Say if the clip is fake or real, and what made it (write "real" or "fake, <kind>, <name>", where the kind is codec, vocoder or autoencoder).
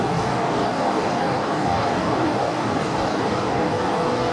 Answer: fake, codec, DAC